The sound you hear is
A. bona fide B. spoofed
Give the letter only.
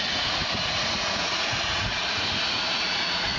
B